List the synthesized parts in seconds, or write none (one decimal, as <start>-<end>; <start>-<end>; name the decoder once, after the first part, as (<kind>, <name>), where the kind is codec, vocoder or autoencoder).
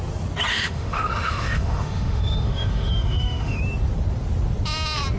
0.5-3.6 (autoencoder, DAC-VAE)